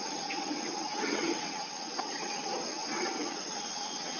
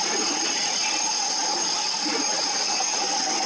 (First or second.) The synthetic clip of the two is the first